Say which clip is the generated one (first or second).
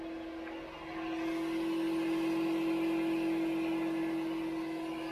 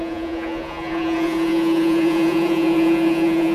second